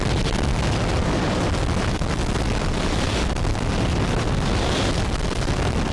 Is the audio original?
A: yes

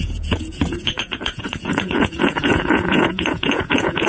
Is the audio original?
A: no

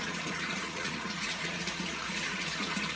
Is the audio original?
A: no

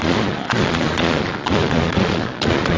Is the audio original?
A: no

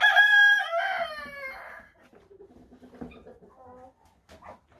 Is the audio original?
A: yes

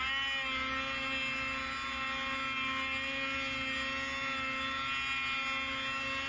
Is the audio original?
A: yes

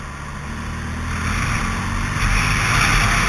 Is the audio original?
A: yes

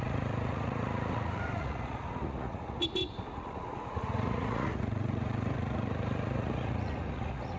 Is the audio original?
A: no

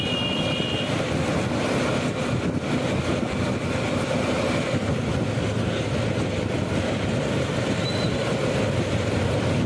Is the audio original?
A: yes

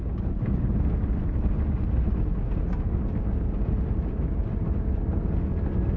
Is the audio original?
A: yes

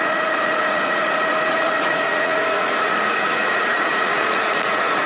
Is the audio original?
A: no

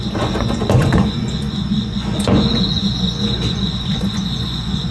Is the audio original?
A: no